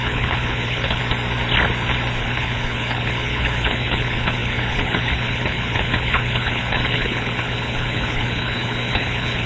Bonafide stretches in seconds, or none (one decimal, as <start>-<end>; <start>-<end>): 1.0-2.2